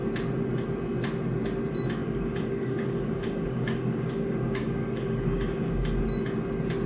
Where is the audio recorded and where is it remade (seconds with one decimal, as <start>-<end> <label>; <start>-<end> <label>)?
0.0-2.0 recorded; 2.0-6.0 remade; 6.0-6.9 recorded